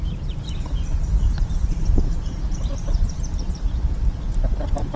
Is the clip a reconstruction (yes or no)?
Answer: yes